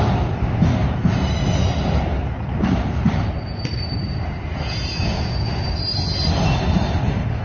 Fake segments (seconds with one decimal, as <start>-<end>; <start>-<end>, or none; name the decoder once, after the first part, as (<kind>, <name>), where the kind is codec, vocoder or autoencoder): 4.5-5.5 (vocoder, Vocos)